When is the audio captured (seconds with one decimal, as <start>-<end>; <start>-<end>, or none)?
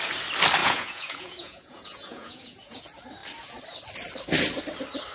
0.0-0.6; 2.8-5.1